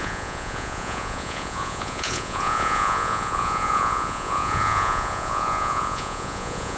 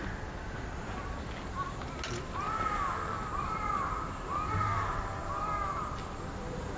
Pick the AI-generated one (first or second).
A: first